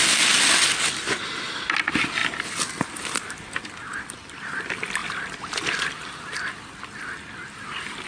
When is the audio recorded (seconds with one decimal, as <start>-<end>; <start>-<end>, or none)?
0.0-8.1